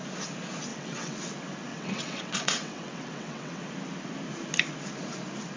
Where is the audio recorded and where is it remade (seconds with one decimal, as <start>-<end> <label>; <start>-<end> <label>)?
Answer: 0.0-0.7 recorded; 0.7-1.2 remade; 1.2-1.7 recorded; 1.7-3.7 remade; 3.7-5.6 recorded